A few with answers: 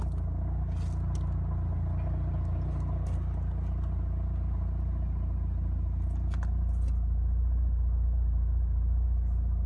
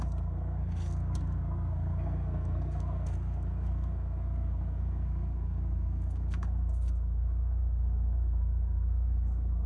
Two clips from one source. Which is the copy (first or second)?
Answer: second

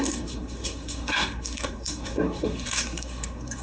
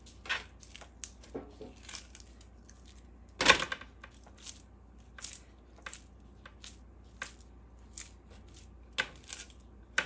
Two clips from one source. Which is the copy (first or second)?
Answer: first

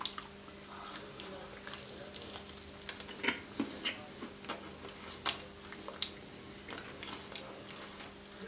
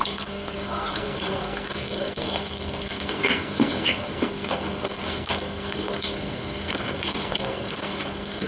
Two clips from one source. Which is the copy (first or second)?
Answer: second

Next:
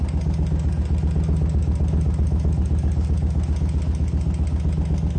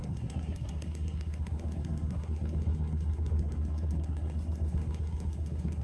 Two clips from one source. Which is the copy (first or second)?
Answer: second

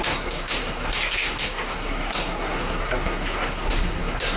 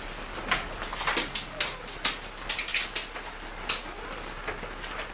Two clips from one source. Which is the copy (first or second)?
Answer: first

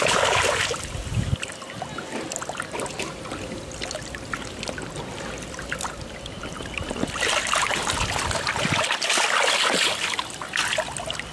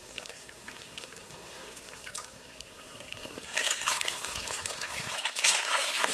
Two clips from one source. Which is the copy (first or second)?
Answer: second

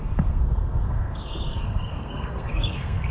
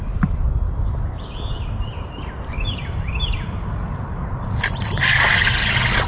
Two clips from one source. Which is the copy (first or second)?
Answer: first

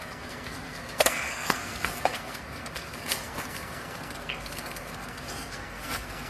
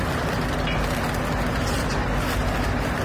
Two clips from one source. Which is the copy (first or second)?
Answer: first